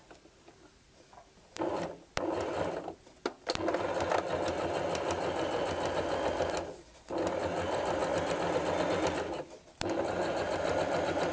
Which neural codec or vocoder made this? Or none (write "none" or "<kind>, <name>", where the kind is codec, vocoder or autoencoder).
none